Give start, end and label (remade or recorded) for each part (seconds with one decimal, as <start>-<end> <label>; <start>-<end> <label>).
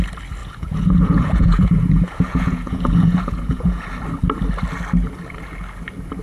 0.0-0.4 recorded; 0.4-3.9 remade; 3.9-6.2 recorded